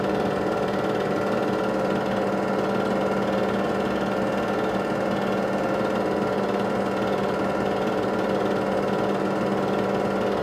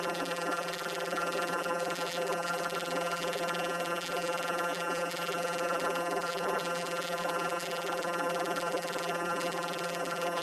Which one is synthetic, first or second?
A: second